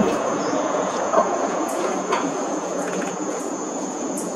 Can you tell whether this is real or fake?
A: fake